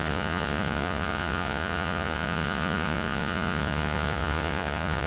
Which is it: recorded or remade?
remade